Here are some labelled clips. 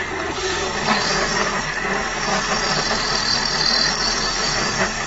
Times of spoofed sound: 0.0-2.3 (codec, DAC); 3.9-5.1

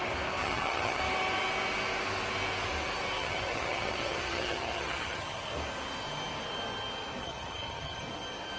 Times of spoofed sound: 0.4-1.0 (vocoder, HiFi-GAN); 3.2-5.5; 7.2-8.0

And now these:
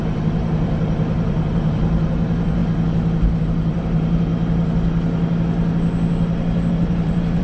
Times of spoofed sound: 0.0-2.6 (vocoder, BigVGAN v2); 3.4-4.3; 6.7-7.4